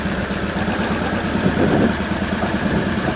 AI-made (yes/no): no